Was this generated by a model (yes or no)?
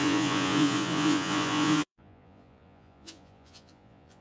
yes